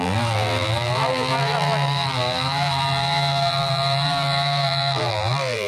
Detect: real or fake fake